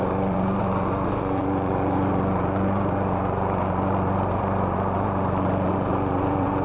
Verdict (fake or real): fake